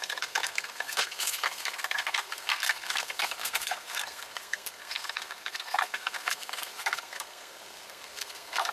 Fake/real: fake